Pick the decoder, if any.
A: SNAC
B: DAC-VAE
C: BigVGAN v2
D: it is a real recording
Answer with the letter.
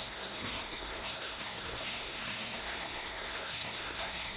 A